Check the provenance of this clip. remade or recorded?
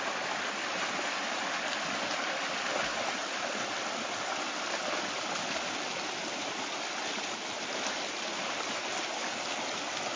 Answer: recorded